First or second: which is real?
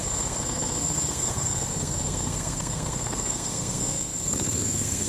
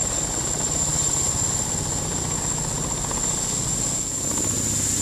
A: second